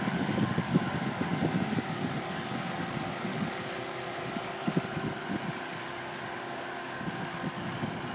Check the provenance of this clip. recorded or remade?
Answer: remade